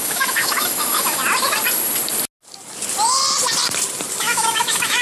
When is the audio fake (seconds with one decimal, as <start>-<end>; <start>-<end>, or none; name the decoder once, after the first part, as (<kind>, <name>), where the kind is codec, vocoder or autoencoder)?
0.0-1.2 (autoencoder, DAC-VAE); 4.2-5.0